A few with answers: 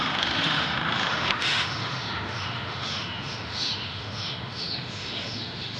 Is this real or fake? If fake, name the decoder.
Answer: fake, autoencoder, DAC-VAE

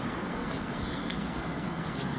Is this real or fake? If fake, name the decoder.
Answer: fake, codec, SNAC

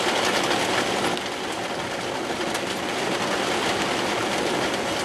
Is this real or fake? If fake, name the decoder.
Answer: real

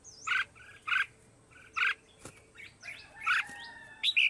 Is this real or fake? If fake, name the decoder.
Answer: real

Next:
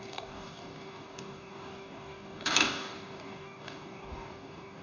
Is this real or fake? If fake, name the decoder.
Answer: fake, codec, DAC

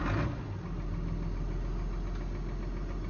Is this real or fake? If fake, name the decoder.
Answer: real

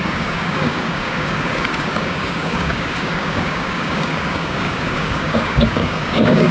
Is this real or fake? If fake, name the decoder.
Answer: fake, codec, DAC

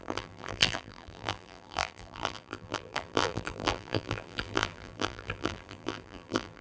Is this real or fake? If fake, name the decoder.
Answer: fake, vocoder, BigVGAN v2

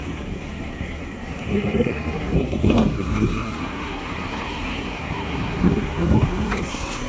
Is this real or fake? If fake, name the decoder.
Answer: fake, codec, SNAC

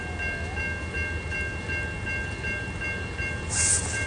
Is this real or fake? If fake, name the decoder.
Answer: real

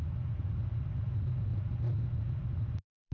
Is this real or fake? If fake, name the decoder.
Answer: real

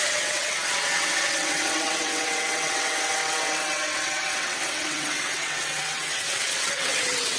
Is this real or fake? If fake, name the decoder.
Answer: fake, vocoder, WaveNeXt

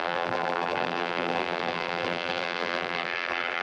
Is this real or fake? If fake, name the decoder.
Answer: fake, vocoder, BigVGAN v2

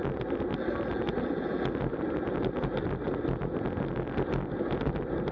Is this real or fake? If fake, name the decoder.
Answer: real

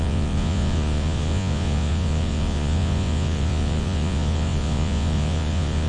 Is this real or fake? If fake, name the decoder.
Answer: fake, vocoder, Vocos